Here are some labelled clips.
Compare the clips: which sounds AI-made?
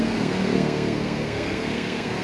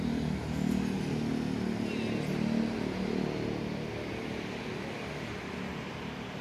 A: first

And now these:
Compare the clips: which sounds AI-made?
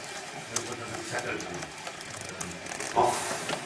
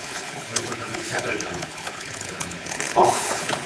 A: second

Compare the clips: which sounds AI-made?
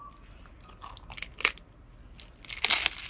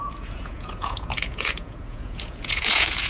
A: second